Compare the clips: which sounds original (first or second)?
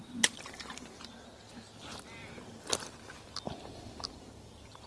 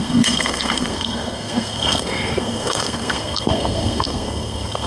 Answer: first